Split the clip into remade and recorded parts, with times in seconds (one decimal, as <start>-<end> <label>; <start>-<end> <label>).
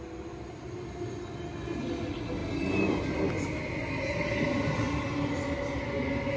0.0-6.4 recorded